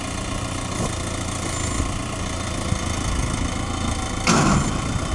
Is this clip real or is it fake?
real